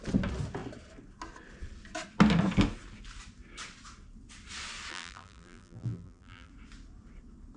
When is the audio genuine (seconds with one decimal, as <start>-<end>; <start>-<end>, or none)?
0.0-4.9; 6.5-7.6